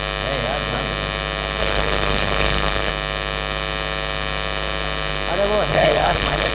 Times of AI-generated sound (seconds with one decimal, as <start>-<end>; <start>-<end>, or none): 1.6-2.9; 5.7-6.5